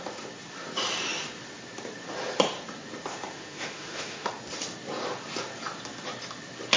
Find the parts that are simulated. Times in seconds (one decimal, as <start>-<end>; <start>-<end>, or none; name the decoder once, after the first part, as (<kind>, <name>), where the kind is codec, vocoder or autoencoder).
3.1-4.3 (autoencoder, DAC-VAE)